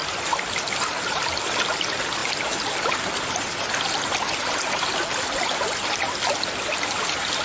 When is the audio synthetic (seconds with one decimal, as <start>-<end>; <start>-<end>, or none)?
none